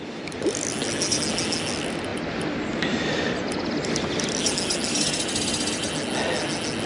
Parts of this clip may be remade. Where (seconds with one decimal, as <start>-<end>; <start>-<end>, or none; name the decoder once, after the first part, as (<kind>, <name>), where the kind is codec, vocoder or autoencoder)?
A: none